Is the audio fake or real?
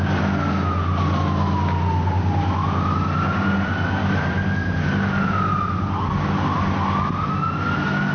real